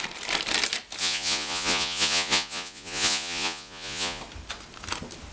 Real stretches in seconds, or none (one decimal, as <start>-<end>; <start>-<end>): 0.0-1.0; 4.2-5.3